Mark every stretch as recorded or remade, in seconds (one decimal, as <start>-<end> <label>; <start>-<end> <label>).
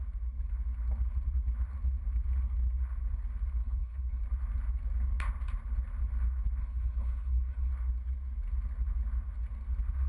0.0-3.6 recorded; 3.6-4.2 remade; 4.2-6.6 recorded; 6.6-7.7 remade; 7.7-10.1 recorded